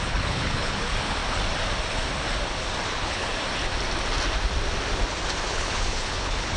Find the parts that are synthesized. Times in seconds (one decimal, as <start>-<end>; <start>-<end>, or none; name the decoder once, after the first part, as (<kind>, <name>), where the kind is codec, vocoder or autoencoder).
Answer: 0.0-1.2 (codec, HILCodec); 2.9-3.3; 5.5-6.6